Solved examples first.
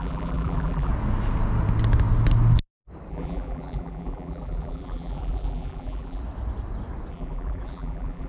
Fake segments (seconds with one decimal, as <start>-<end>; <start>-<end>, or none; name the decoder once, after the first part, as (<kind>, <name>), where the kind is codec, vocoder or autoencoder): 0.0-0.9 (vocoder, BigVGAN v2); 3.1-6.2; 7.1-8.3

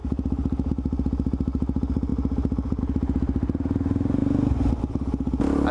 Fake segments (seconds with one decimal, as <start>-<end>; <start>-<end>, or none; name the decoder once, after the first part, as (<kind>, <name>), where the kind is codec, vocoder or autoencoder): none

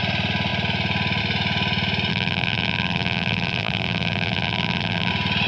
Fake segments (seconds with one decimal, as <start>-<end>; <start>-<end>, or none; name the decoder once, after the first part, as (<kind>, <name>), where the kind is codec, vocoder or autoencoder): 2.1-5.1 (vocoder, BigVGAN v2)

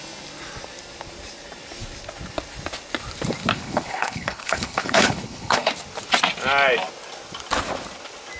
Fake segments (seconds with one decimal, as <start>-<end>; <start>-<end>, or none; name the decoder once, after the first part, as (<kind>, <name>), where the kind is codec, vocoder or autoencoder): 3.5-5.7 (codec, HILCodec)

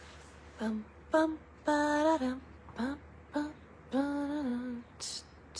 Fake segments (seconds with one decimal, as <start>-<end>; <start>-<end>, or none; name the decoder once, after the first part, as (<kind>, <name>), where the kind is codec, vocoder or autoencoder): none